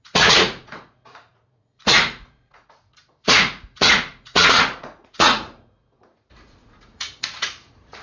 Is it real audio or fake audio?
fake